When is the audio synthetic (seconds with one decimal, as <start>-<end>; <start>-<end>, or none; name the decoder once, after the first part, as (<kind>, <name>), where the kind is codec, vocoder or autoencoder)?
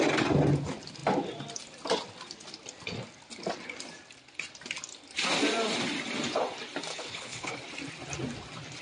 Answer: 6.9-7.5 (codec, HILCodec)